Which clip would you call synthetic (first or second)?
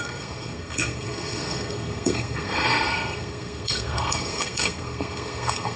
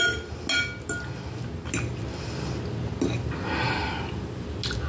first